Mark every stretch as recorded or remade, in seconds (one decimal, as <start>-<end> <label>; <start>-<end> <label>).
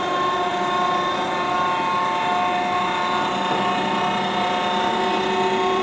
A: 0.0-5.8 recorded